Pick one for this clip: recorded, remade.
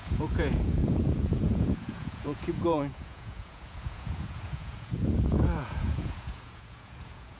remade